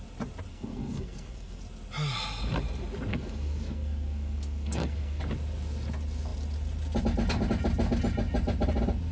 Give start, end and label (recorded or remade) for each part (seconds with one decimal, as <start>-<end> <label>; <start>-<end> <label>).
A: 0.0-0.5 recorded; 0.5-1.6 remade; 1.6-3.1 recorded; 3.1-5.2 remade; 5.2-9.1 recorded